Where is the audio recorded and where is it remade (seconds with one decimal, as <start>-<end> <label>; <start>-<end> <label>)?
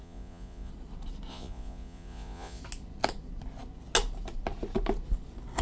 0.0-0.7 remade; 0.7-1.3 recorded; 1.3-2.6 remade; 2.6-5.6 recorded